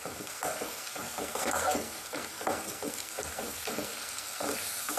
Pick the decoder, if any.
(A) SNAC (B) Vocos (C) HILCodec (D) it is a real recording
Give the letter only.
A